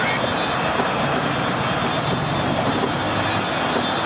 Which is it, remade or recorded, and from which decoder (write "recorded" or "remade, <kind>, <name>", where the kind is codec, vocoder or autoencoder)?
recorded